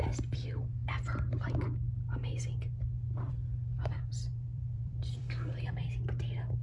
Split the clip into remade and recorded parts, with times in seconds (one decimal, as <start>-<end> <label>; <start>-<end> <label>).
0.0-3.7 recorded; 3.7-5.2 remade; 5.2-6.6 recorded

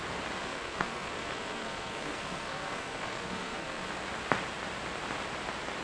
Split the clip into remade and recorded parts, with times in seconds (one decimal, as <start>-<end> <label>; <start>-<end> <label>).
0.0-0.4 recorded; 0.4-3.9 remade; 3.9-5.8 recorded

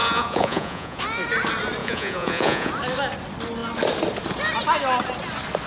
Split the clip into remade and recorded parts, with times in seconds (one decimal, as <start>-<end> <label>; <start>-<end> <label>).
0.0-1.0 remade; 1.0-1.8 recorded; 1.8-2.7 remade; 2.7-5.7 recorded